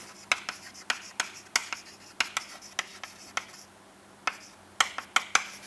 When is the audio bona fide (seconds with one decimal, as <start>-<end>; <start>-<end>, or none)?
0.0-5.7